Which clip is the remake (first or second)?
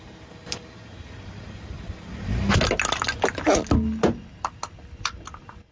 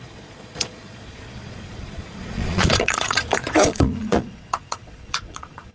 second